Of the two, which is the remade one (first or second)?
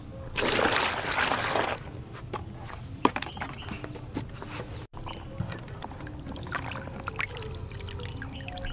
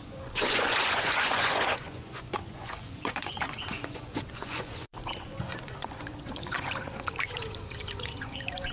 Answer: second